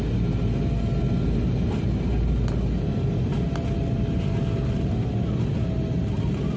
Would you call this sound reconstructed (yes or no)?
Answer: no